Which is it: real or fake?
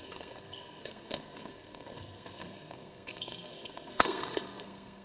fake